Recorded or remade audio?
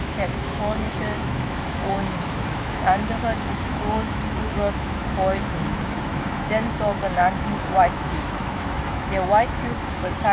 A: remade